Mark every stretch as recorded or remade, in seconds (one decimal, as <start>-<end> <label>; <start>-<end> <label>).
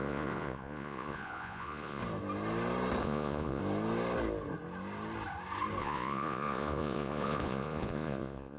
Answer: 0.0-2.0 remade; 2.0-3.0 recorded; 3.0-3.6 remade; 3.6-5.8 recorded; 5.8-8.6 remade